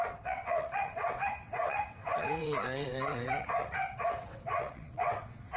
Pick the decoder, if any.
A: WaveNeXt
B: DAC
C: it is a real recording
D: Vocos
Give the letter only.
A